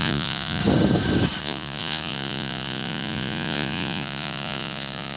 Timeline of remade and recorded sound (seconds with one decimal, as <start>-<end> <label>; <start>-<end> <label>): 0.0-0.6 remade; 0.6-1.4 recorded; 1.4-5.2 remade